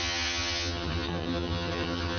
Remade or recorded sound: remade